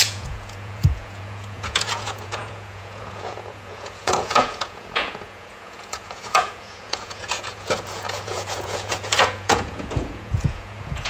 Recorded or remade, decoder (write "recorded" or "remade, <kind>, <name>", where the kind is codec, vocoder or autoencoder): remade, vocoder, Vocos